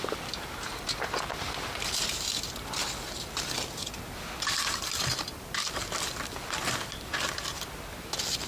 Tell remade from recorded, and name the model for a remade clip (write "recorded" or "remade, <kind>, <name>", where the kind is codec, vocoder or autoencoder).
recorded